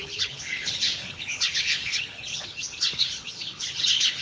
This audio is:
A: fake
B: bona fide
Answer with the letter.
A